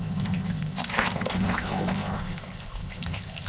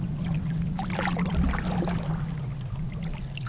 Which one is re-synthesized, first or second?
first